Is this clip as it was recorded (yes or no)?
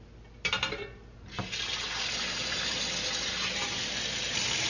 yes